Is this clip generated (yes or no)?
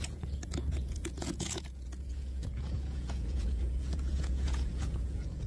yes